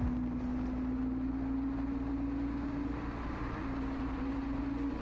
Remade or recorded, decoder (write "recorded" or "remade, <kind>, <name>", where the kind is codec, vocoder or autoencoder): recorded